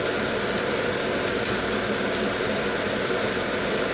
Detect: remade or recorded recorded